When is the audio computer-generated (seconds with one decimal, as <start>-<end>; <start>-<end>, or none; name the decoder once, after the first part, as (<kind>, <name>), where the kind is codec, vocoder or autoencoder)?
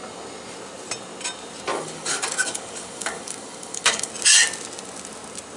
1.7-4.1 (codec, DAC)